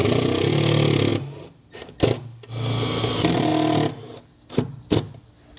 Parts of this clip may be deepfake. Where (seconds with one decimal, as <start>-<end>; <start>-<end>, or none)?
none